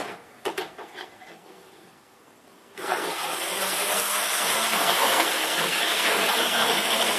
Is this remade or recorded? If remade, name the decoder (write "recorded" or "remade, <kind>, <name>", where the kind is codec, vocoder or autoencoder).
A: remade, codec, SNAC